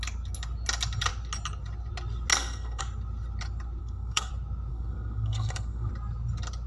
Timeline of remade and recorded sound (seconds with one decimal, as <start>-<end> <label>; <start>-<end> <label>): 0.0-2.3 recorded; 2.3-2.8 remade; 2.8-3.8 recorded; 3.8-4.3 remade; 4.3-4.7 recorded; 4.7-5.9 remade; 5.9-6.7 recorded